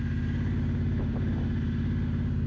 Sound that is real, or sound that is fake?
real